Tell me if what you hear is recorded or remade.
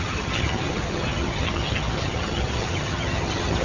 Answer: remade